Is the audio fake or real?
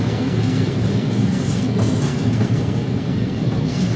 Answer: fake